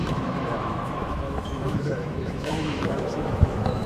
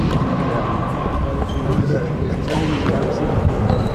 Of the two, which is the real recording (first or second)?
second